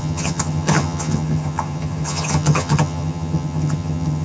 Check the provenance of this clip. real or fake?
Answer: fake